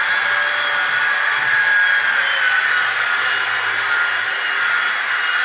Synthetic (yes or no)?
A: no